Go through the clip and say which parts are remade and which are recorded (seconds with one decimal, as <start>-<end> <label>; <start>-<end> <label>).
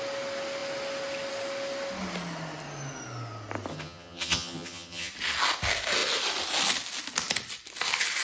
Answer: 0.0-3.7 recorded; 3.7-5.1 remade; 5.1-8.2 recorded